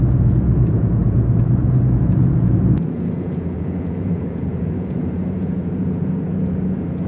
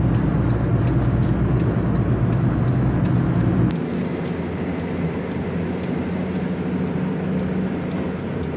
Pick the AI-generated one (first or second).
first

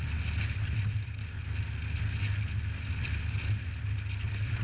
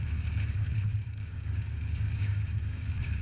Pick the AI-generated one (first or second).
second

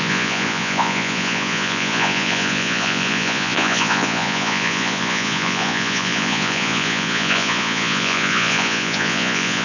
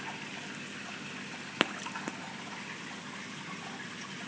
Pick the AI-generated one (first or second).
first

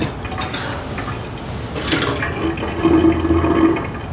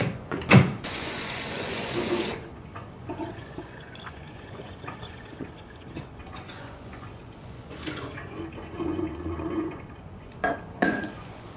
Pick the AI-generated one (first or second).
second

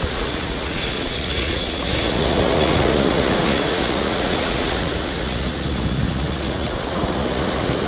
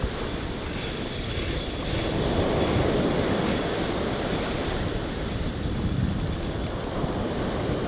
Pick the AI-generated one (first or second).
first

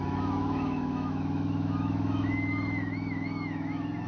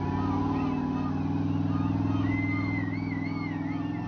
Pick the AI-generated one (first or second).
first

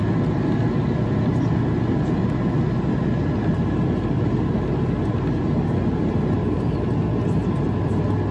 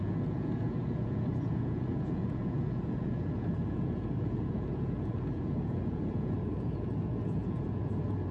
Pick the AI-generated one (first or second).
second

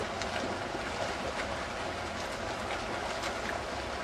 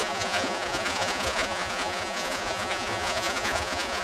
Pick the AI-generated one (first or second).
second